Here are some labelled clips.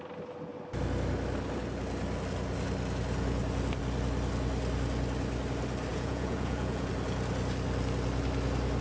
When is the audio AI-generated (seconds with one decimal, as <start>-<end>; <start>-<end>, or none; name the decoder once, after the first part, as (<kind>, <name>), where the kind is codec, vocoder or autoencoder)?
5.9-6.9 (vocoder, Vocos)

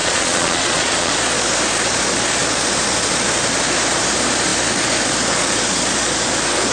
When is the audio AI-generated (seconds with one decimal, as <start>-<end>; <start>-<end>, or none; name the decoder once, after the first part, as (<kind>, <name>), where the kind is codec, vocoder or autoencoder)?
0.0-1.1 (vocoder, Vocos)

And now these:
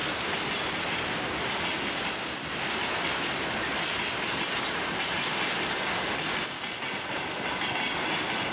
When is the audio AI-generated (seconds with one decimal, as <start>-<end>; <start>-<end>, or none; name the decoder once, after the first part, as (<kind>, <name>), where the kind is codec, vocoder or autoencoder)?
none

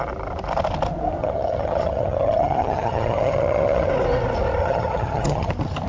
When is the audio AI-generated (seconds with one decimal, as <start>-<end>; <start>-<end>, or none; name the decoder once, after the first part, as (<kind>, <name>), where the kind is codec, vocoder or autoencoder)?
1.2-3.9 (vocoder, HiFi-GAN); 4.6-5.5